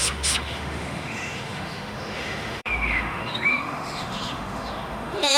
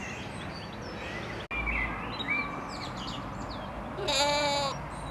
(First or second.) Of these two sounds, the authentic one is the second